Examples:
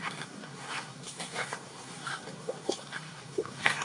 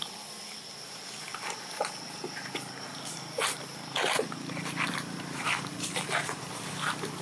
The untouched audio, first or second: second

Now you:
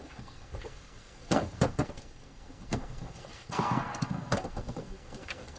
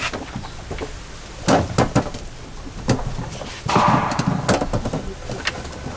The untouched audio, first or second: second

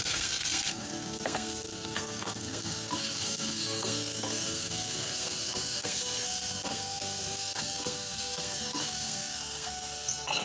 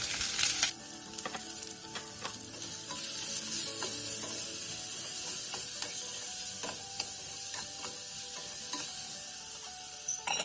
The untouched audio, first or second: second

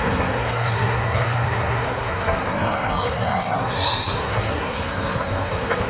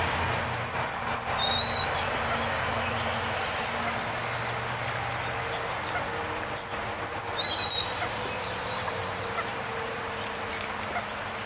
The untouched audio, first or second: second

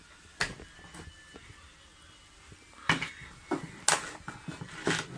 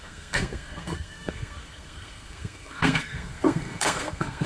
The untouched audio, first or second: first